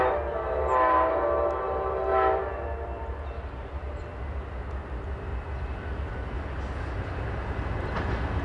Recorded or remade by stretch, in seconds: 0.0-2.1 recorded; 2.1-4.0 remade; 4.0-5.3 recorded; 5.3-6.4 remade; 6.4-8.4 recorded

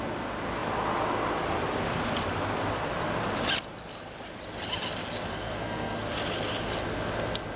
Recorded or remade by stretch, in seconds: 0.0-5.3 recorded; 5.3-6.1 remade; 6.1-7.6 recorded

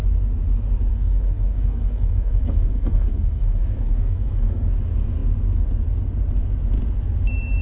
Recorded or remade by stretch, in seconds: 0.0-0.9 recorded; 0.9-4.7 remade; 4.7-7.6 recorded

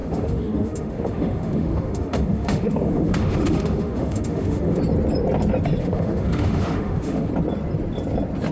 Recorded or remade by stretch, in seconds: 0.0-4.8 remade; 4.8-5.8 recorded; 5.8-7.3 remade; 7.3-8.5 recorded

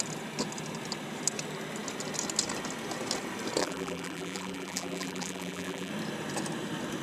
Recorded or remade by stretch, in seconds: 0.0-3.6 recorded; 3.6-5.9 remade; 5.9-7.0 recorded

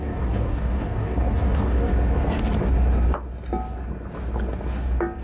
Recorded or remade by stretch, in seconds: 0.0-1.9 remade; 1.9-5.2 recorded

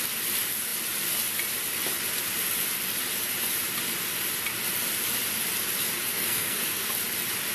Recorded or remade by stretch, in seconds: 0.0-6.1 recorded; 6.1-6.9 remade; 6.9-7.5 recorded